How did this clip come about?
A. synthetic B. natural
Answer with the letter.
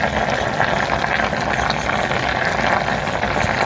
B